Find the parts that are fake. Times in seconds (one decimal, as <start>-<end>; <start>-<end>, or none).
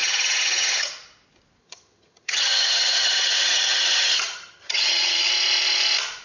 0.0-0.9; 1.6-5.3